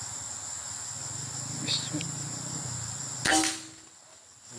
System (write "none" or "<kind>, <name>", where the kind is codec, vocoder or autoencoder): none